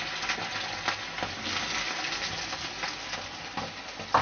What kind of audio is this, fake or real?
real